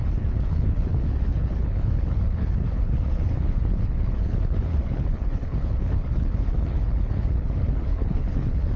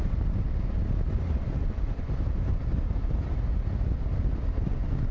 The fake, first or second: first